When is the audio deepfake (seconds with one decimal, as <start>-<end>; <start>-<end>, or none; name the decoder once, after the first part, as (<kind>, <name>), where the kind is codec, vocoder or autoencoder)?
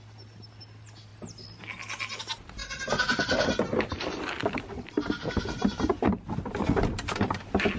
none